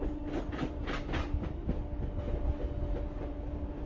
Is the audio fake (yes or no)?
no